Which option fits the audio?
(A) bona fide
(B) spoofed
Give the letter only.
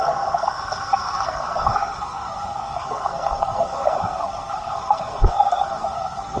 B